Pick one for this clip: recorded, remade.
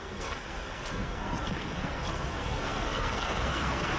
remade